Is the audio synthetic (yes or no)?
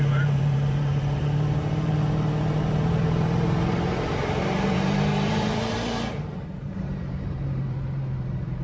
yes